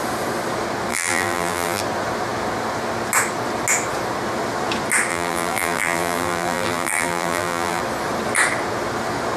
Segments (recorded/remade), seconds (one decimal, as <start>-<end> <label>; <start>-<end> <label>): 0.0-0.9 recorded; 0.9-1.8 remade; 1.8-5.1 recorded; 5.1-7.8 remade; 7.8-9.4 recorded